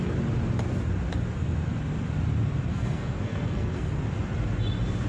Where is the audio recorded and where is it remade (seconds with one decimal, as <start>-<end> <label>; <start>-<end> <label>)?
0.0-2.7 recorded; 2.7-3.9 remade; 3.9-5.1 recorded